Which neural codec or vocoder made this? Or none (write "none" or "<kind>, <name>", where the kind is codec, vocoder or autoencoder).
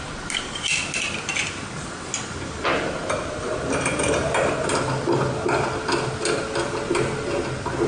none